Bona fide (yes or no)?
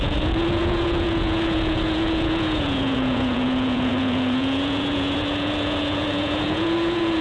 no